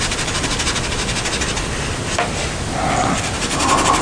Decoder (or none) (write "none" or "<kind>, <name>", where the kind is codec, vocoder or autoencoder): none